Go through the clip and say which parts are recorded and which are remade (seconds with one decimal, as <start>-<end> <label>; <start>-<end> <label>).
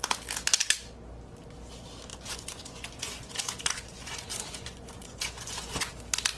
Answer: 0.0-2.1 recorded; 2.1-5.9 remade; 5.9-6.4 recorded